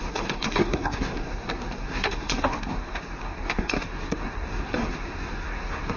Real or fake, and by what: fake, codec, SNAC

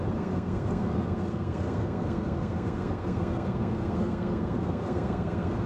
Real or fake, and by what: fake, codec, SNAC